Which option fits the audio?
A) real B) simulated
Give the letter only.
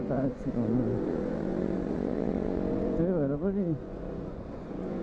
B